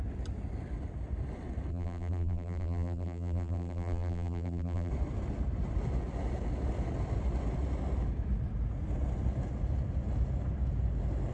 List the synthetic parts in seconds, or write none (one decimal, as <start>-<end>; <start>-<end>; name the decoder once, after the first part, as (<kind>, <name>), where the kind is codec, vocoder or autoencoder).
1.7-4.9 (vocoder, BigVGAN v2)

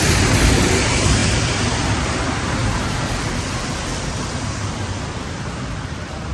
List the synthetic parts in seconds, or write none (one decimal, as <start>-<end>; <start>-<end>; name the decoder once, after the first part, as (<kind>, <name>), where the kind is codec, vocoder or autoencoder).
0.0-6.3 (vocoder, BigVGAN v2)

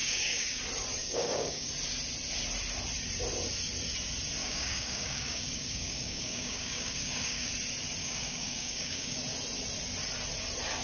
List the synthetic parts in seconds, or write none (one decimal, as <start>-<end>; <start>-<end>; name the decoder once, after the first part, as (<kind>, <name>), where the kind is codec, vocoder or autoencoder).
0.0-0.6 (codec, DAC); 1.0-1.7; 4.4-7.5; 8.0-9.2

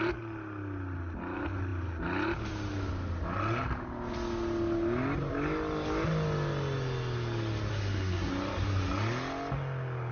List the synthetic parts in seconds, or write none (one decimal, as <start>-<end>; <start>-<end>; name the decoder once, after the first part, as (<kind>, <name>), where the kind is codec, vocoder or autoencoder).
7.7-8.3 (codec, SNAC)

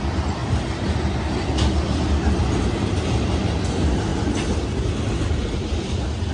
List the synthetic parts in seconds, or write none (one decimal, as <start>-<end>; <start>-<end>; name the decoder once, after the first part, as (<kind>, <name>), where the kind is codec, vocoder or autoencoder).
none

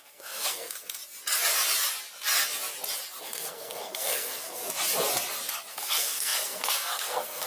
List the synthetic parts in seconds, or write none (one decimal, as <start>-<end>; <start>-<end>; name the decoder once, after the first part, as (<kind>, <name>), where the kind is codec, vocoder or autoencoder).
0.0-1.0 (codec, SNAC); 3.2-4.6; 5.7-7.5